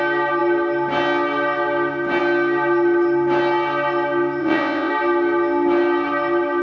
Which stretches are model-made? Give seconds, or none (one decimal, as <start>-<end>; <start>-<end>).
4.4-4.9